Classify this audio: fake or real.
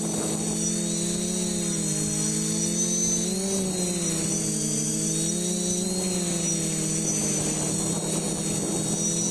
real